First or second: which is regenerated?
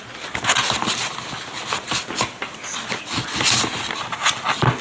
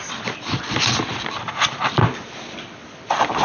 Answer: second